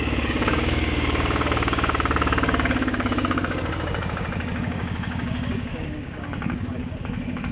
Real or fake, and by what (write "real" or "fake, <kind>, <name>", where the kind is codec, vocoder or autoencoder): fake, codec, DAC